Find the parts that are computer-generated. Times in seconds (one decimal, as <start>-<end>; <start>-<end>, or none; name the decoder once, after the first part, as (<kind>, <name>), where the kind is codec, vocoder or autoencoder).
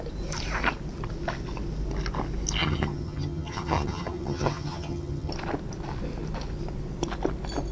2.6-5.3 (vocoder, HiFi-GAN)